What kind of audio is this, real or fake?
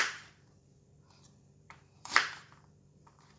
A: fake